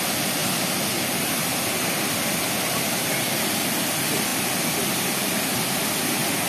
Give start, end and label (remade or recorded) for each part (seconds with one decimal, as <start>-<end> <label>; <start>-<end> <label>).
0.0-6.5 recorded